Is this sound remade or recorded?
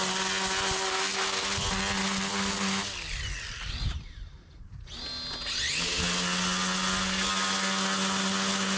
recorded